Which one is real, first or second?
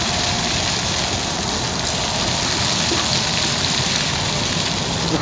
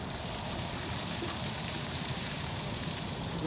first